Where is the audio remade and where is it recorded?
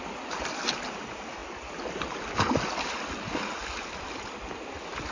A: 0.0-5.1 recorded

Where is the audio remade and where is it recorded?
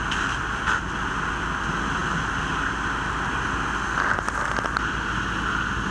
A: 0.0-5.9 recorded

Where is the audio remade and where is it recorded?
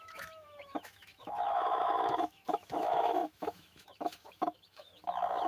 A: 0.0-5.5 remade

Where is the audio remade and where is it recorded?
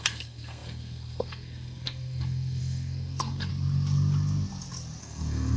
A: 0.0-3.5 remade; 3.5-5.0 recorded; 5.0-5.6 remade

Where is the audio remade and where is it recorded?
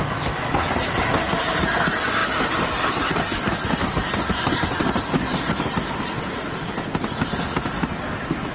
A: 0.0-8.5 recorded